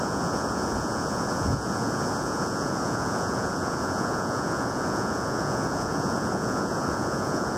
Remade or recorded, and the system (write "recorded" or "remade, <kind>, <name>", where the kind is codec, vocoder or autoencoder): remade, vocoder, Vocos